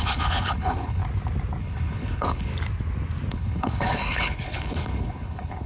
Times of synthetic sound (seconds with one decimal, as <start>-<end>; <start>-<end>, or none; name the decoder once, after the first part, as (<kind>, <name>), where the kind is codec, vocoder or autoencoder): 0.0-1.0 (codec, HILCodec); 1.6-2.5; 3.3-5.7